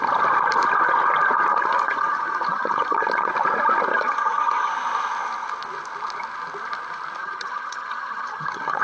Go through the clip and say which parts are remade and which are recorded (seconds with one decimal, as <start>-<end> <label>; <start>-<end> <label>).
0.0-1.5 recorded; 1.5-3.3 remade; 3.3-3.9 recorded; 3.9-4.7 remade; 4.7-7.2 recorded; 7.2-8.8 remade